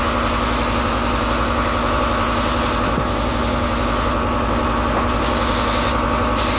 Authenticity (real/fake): real